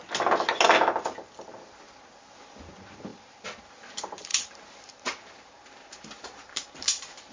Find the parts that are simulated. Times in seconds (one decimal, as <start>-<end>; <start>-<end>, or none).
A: 4.3-7.3